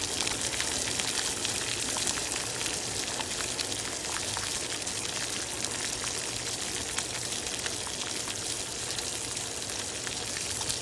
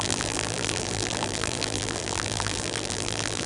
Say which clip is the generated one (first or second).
second